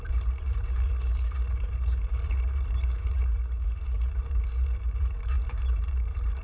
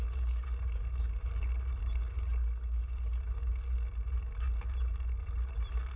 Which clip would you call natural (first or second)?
second